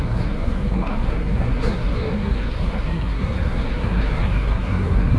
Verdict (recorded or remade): remade